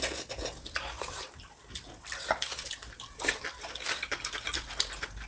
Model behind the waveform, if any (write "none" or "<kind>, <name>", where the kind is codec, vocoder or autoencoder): none